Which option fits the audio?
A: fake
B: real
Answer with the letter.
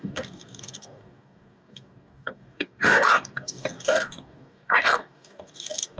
A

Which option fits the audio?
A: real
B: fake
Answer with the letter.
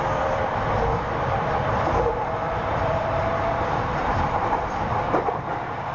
B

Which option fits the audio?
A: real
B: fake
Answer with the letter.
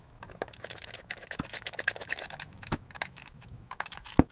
B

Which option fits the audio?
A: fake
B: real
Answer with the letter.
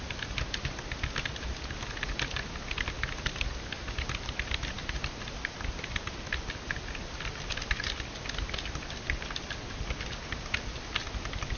B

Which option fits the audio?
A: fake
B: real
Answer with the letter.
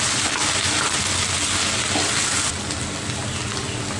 B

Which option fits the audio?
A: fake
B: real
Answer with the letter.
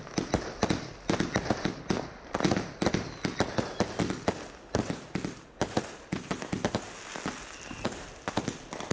B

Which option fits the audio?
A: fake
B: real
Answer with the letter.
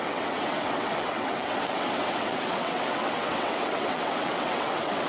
A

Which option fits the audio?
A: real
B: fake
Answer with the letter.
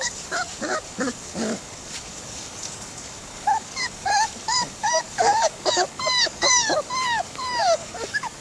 B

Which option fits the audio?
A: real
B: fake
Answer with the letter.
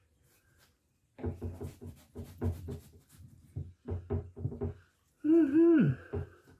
A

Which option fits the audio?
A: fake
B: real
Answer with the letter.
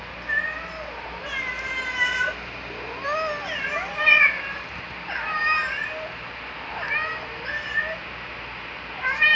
B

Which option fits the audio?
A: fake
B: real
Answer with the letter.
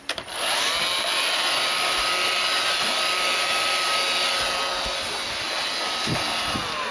B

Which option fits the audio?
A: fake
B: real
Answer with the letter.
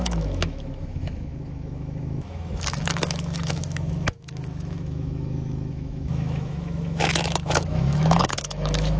A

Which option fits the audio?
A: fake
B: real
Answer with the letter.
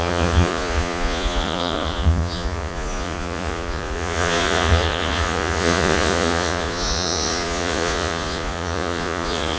A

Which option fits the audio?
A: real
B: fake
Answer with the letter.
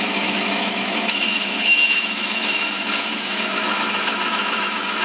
B